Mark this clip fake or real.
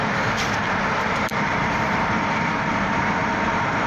fake